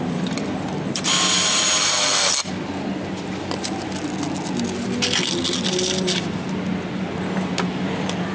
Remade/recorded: recorded